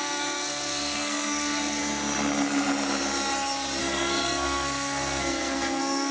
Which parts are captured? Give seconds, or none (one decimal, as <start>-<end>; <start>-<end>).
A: 1.8-3.8